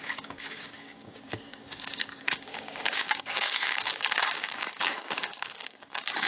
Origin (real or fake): fake